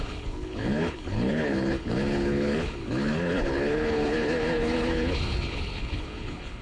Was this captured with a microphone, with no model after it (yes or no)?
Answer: no